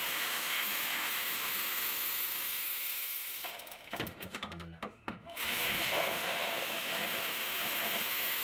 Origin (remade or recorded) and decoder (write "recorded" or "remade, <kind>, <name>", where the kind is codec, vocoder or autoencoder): remade, autoencoder, DAC-VAE